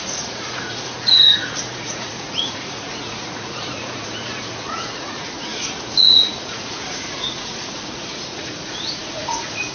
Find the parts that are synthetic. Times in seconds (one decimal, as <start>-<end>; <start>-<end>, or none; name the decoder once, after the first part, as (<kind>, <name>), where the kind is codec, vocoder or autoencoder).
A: 0.0-9.7 (vocoder, Vocos)